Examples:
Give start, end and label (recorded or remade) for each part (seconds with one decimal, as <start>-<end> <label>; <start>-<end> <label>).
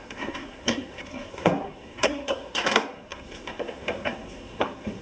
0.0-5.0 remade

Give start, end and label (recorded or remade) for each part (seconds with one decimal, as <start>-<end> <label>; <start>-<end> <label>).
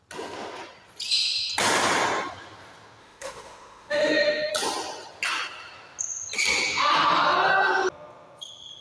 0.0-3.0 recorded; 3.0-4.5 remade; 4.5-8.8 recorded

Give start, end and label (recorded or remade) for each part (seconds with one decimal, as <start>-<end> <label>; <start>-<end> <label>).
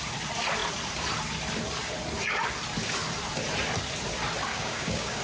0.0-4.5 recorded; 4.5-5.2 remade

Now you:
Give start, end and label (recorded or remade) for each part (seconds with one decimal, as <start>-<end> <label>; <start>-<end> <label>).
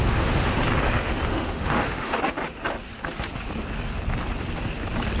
0.0-0.6 remade; 0.6-1.3 recorded; 1.3-2.2 remade; 2.2-5.2 recorded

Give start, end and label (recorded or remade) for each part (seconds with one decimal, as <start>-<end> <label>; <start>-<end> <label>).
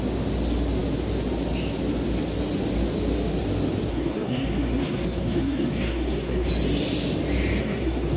0.0-3.9 recorded; 3.9-6.5 remade; 6.5-7.6 recorded; 7.6-8.2 remade